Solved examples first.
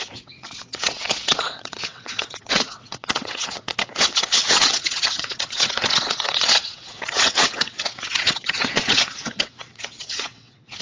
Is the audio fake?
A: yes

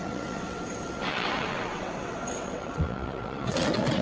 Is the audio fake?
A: yes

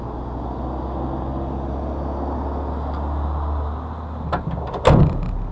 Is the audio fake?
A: no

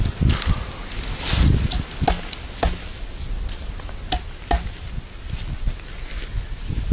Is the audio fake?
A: no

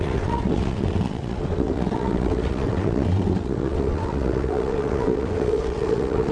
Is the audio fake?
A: yes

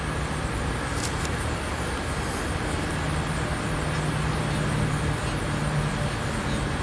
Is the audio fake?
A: no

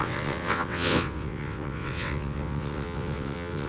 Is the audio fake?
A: yes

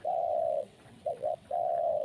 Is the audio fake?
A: yes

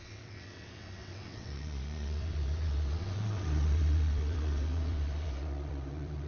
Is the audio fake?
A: yes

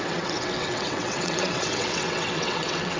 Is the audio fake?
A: yes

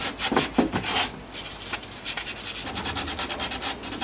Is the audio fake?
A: no